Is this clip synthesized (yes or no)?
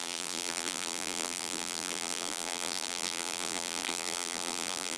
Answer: yes